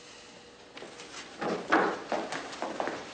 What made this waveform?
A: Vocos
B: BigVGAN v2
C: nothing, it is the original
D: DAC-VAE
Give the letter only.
C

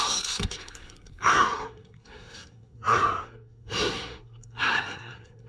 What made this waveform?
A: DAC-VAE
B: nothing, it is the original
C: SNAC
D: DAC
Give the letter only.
C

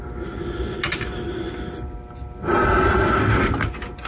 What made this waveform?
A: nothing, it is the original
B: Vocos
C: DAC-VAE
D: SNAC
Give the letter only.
A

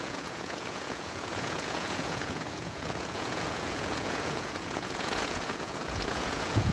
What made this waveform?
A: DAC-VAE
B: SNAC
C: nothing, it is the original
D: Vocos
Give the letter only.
D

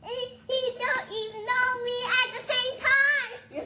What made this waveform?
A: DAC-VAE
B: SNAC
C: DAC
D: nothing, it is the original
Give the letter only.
D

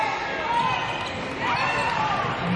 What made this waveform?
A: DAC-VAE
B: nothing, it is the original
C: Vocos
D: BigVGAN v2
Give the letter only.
B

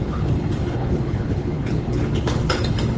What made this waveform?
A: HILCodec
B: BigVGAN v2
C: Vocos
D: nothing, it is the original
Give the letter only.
A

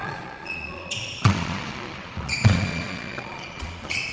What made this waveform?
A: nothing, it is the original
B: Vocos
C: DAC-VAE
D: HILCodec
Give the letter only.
B